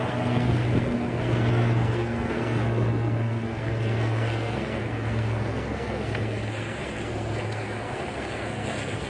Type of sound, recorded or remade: remade